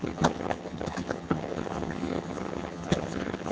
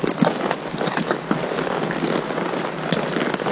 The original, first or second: second